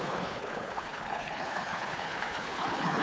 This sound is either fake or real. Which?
fake